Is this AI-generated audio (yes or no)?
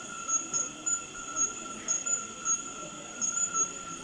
no